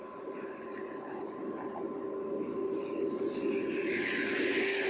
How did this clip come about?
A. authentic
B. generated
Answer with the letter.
A